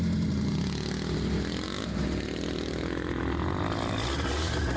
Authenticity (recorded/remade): recorded